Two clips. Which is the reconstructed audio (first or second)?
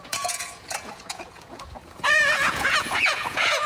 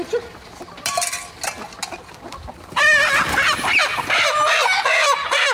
first